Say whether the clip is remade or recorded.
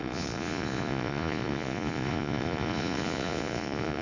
remade